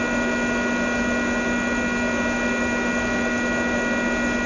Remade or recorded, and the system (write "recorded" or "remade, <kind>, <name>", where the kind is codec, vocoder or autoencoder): recorded